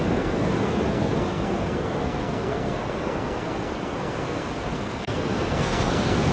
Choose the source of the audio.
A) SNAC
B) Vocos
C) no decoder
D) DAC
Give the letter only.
A